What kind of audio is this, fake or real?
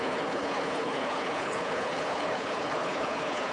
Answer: fake